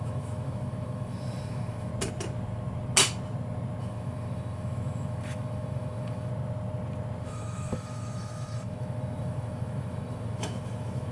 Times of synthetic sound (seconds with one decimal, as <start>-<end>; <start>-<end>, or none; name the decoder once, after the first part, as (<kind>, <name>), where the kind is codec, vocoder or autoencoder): 0.0-1.9 (autoencoder, DAC-VAE); 3.8-6.3; 7.2-11.1